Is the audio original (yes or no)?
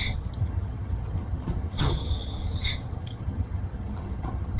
no